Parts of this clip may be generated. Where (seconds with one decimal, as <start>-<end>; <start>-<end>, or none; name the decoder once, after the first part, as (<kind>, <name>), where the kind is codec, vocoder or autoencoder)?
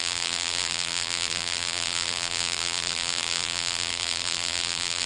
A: 0.0-5.1 (vocoder, BigVGAN v2)